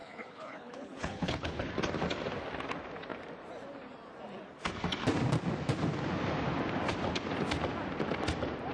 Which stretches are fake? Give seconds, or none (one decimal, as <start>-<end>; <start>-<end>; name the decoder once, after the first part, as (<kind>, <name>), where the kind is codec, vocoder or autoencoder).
0.0-1.7 (codec, HILCodec)